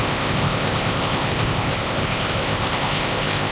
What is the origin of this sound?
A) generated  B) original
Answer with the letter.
A